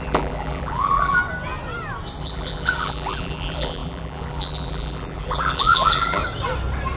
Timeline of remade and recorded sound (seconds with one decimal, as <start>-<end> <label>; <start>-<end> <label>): 0.0-1.2 remade; 1.2-2.2 recorded; 2.2-6.2 remade; 6.2-7.0 recorded